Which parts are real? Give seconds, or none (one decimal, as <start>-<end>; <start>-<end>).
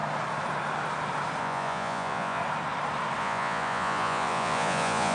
0.0-1.4; 2.4-3.2